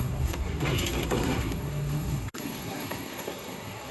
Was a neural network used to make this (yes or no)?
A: yes